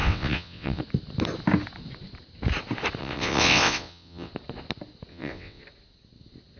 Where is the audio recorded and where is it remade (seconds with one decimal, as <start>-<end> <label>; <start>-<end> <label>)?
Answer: 0.0-0.8 remade; 0.8-3.0 recorded; 3.0-4.3 remade; 4.3-5.1 recorded; 5.1-5.6 remade; 5.6-6.6 recorded